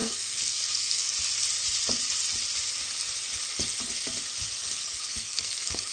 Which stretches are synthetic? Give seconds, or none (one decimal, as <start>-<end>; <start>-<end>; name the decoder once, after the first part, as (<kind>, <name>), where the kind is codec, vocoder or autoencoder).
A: 0.0-1.1 (codec, SNAC); 4.6-5.9